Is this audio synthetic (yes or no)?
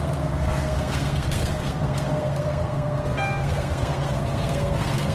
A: yes